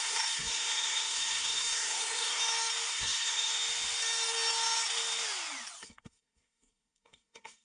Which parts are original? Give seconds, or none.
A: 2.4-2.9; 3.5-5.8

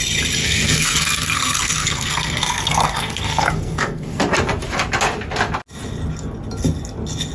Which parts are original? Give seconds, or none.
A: 0.0-0.4; 4.2-7.3

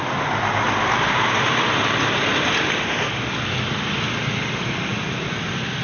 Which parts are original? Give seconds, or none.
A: 0.0-5.8

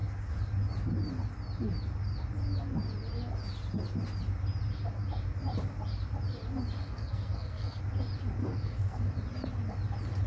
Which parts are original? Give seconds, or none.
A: 0.0-6.8; 7.8-8.4; 9.1-10.3

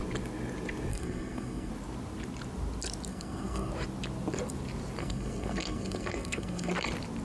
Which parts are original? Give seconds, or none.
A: 0.0-0.9; 1.7-3.1; 3.7-5.0; 6.7-7.2

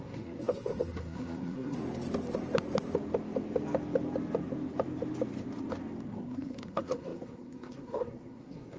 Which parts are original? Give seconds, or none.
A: 1.8-6.1

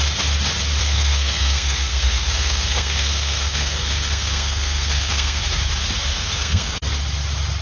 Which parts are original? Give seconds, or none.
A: 0.0-0.8; 5.4-6.1; 6.8-7.6